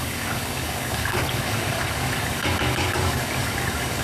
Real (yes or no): no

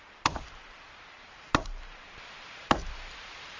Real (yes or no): no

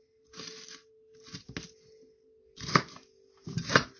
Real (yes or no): yes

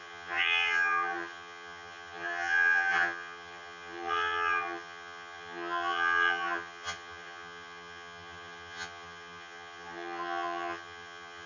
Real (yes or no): no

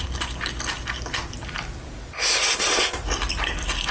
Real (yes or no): yes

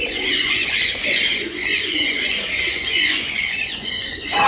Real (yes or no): no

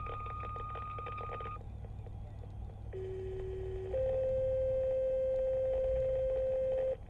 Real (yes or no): yes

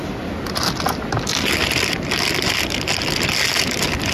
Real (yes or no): yes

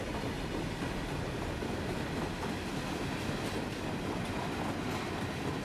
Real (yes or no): yes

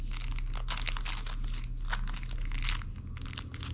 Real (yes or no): yes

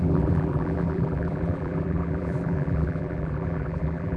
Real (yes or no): no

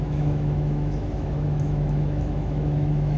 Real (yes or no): no